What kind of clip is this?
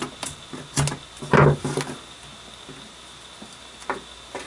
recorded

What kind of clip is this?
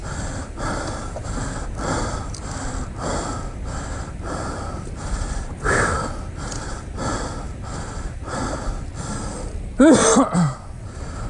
recorded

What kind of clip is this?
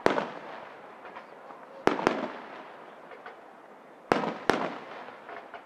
recorded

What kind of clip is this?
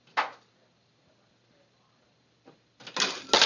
recorded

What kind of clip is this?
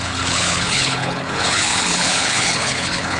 remade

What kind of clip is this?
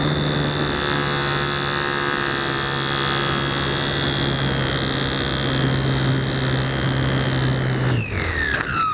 recorded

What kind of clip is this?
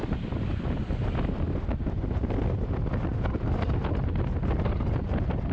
recorded